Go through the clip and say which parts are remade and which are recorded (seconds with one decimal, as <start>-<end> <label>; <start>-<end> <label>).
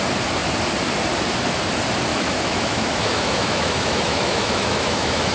0.0-2.1 recorded; 2.1-5.3 remade